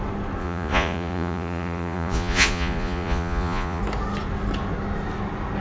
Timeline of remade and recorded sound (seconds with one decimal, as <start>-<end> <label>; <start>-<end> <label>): 0.0-0.4 recorded; 0.4-3.8 remade; 3.8-5.6 recorded